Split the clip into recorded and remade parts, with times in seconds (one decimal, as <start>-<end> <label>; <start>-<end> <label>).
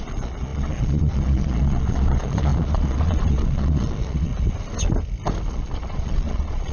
0.0-4.3 remade; 4.3-5.5 recorded; 5.5-6.7 remade